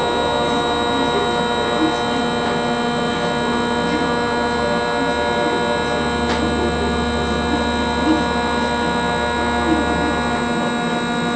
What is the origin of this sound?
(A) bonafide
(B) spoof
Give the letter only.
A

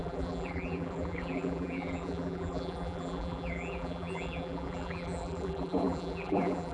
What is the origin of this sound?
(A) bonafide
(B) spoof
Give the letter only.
B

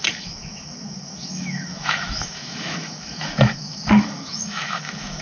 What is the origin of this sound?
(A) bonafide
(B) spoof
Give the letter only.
B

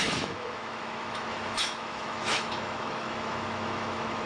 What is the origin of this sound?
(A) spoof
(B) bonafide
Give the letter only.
A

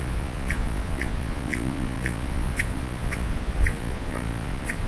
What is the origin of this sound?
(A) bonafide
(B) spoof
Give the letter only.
B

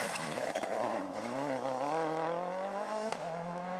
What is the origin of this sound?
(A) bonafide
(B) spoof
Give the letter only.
B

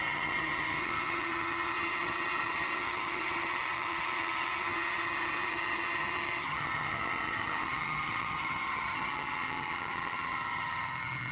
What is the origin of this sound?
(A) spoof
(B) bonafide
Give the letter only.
A